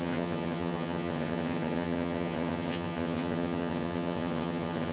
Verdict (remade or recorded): remade